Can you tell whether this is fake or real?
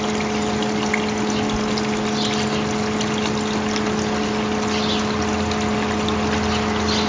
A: real